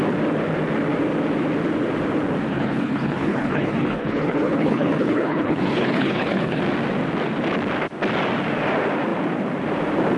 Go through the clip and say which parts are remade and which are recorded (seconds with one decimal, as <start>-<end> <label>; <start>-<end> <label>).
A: 0.0-2.5 recorded; 2.5-6.6 remade; 6.6-10.2 recorded